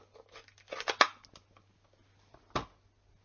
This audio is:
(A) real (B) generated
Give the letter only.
A